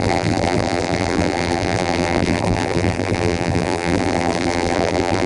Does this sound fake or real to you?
fake